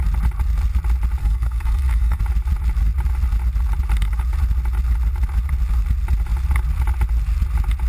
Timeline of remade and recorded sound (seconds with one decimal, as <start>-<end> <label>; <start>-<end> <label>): 0.0-1.2 recorded; 1.2-2.2 remade; 2.2-7.9 recorded